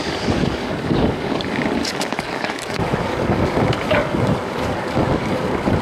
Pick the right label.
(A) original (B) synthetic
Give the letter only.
B